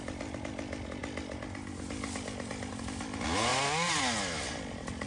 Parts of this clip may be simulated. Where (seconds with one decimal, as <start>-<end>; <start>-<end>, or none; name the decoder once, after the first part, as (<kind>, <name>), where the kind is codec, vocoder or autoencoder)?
none